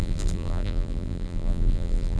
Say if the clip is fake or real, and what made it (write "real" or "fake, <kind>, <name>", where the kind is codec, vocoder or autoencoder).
fake, vocoder, BigVGAN v2